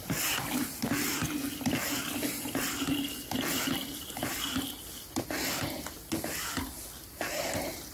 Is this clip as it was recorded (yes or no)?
yes